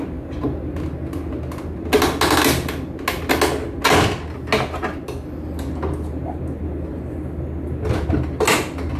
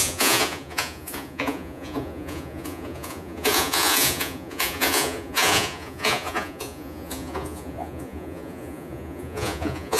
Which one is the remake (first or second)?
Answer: second